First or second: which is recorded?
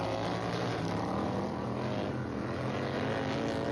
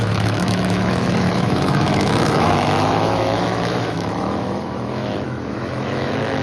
first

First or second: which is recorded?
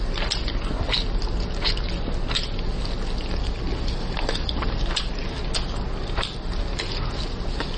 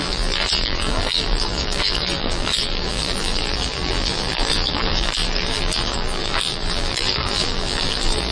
first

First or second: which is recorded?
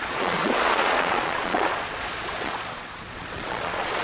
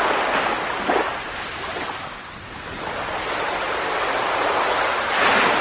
second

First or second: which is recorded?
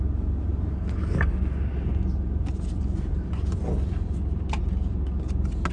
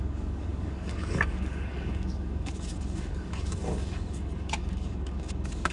first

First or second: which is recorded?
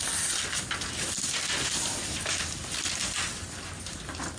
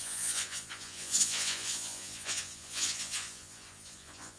first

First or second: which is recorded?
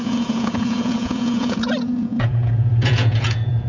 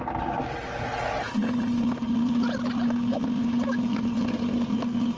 second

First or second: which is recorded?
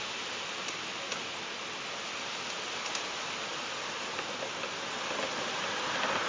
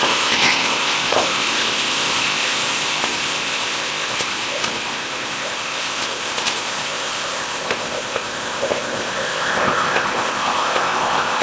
first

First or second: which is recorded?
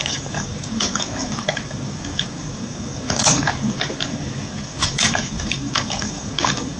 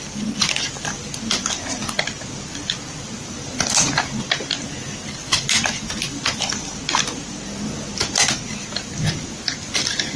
second